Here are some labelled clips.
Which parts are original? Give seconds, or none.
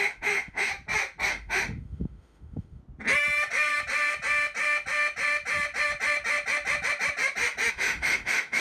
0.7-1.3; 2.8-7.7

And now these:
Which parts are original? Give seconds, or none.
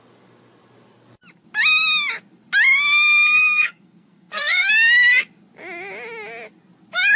0.0-3.4; 4.7-7.2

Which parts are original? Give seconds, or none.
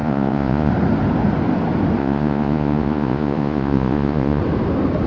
0.7-2.0; 4.4-5.1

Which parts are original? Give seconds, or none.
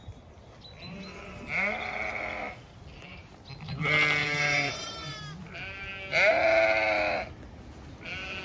0.0-4.2; 4.9-8.4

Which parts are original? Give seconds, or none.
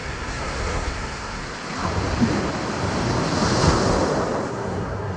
1.4-4.5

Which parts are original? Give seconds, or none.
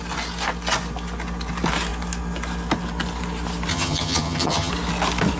0.0-3.7; 4.7-5.4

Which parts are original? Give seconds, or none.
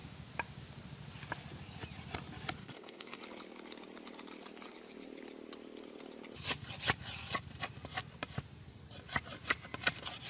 0.0-2.6; 3.2-10.3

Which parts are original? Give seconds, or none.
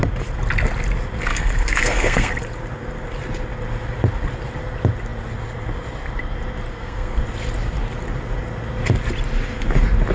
0.0-1.3; 2.3-6.7; 7.2-10.1